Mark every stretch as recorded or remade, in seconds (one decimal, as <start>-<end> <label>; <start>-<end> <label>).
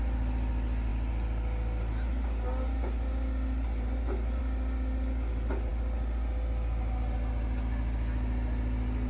0.0-9.1 recorded